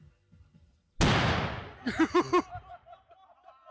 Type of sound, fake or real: real